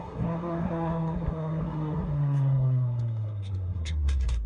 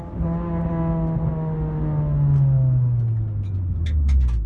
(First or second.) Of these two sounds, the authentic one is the second